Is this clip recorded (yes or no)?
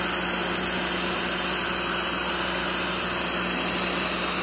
yes